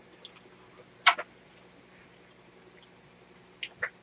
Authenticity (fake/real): real